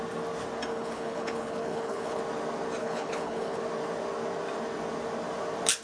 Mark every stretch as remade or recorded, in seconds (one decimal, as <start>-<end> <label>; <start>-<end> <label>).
0.0-0.7 recorded; 0.7-2.2 remade; 2.2-2.8 recorded; 2.8-3.6 remade; 3.6-5.8 recorded